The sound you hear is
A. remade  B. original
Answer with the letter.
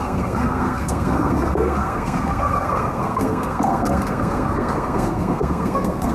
A